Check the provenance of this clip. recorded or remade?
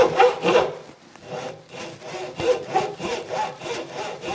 recorded